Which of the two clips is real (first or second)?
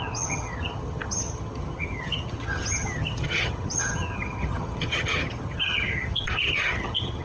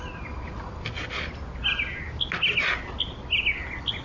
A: second